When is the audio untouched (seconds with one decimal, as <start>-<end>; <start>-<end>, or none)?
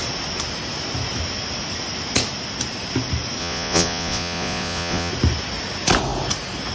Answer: 0.0-3.4; 5.1-6.7